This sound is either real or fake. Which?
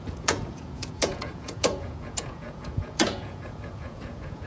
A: fake